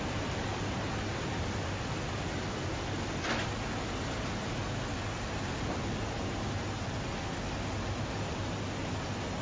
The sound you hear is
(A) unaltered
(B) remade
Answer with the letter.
A